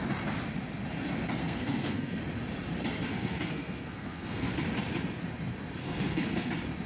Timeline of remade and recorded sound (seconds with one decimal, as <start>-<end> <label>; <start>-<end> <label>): 0.0-1.4 recorded; 1.4-2.2 remade; 2.2-3.1 recorded; 3.1-4.5 remade; 4.5-5.8 recorded; 5.8-6.5 remade; 6.5-6.9 recorded